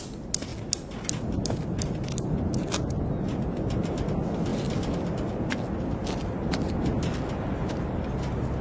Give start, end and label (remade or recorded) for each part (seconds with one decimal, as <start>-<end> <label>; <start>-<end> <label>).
0.0-8.6 recorded